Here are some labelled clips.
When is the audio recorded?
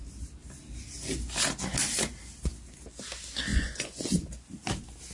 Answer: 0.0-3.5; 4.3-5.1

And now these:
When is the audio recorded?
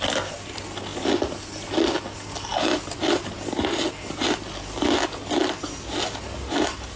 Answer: 0.0-7.0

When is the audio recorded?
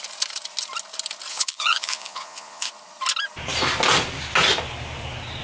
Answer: 0.0-1.3; 2.7-5.4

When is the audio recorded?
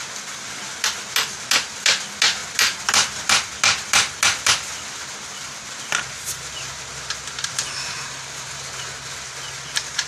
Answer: 0.0-10.1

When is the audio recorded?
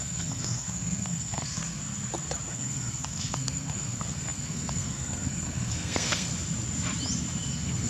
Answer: 1.8-2.5; 6.3-7.5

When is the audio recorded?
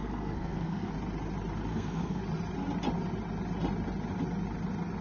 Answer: 0.9-1.7; 2.2-5.0